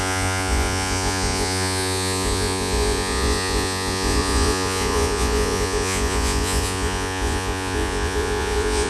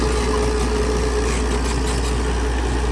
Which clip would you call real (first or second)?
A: second